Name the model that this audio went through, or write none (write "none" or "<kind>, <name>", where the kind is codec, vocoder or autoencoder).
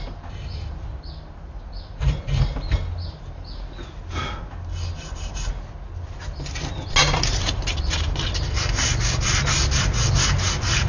none